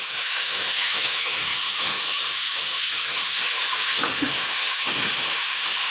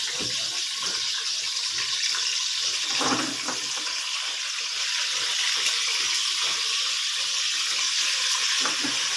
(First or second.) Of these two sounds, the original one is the second